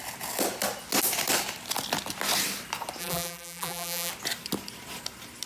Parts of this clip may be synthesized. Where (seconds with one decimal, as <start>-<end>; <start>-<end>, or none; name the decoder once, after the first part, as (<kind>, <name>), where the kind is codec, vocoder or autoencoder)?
3.0-4.1 (vocoder, BigVGAN v2)